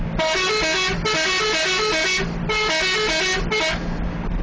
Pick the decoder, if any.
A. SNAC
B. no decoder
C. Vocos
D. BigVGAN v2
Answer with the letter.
B